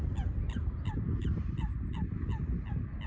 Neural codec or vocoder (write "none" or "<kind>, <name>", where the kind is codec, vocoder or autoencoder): none